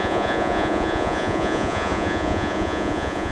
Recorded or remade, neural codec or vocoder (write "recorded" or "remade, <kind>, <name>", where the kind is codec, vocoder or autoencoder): remade, vocoder, Vocos